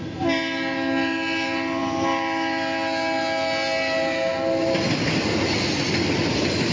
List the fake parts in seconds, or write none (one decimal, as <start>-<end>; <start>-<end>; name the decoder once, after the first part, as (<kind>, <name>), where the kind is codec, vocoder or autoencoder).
none